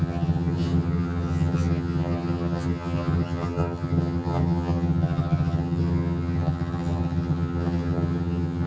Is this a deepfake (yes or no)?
yes